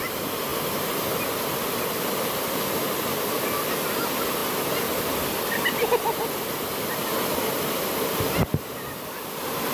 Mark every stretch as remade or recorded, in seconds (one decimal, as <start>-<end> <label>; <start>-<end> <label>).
0.0-9.7 recorded